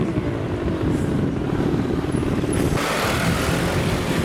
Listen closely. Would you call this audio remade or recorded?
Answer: recorded